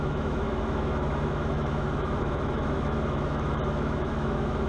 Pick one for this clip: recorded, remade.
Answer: remade